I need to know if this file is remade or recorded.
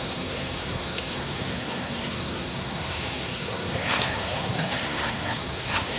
remade